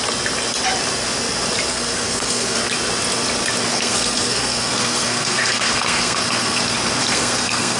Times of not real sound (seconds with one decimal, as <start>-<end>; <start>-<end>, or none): 1.7-2.6; 3.7-6.6; 7.0-7.8